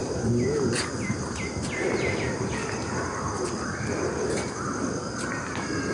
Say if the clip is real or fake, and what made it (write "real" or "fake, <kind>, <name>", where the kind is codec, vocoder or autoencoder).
real